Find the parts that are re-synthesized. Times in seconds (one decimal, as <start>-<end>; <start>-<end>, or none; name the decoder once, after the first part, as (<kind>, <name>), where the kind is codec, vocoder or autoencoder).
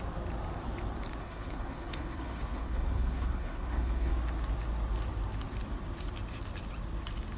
1.2-4.1 (codec, HILCodec)